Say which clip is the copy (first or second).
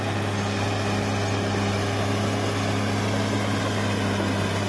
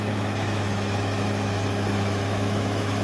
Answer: second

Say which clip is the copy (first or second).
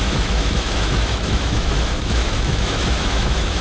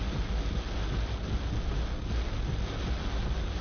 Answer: first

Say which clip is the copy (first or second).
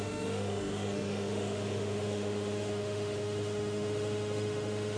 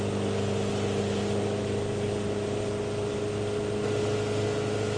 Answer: first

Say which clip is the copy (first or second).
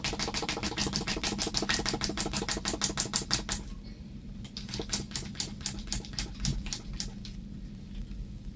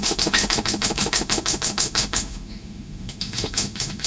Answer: second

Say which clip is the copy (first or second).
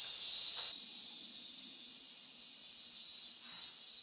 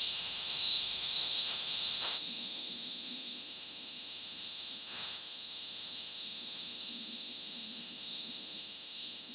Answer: second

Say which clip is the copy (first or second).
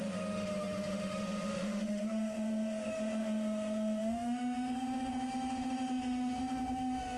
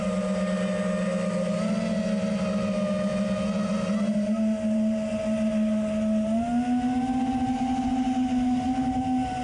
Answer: first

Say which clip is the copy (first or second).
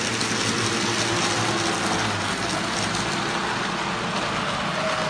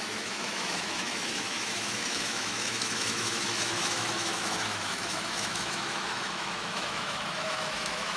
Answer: second